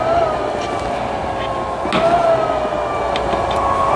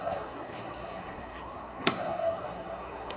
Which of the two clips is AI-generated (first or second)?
second